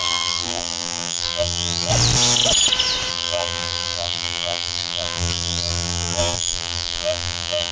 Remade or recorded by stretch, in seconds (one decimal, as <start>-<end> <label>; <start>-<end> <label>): 0.0-1.9 remade; 1.9-3.1 recorded; 3.1-7.7 remade